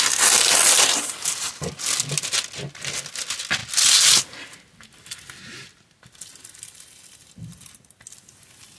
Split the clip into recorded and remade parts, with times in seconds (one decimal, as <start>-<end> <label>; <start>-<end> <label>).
0.0-8.8 recorded